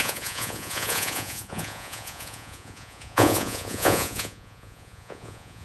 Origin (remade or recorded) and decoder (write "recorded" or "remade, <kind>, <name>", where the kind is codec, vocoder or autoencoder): remade, vocoder, Vocos